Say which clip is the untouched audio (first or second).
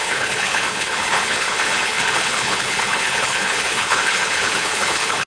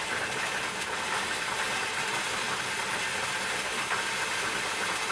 second